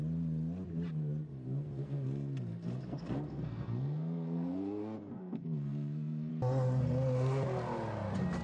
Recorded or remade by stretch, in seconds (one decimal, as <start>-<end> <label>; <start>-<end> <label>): 0.0-1.3 recorded; 1.3-6.3 remade; 6.3-8.4 recorded